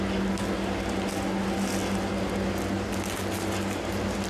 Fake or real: real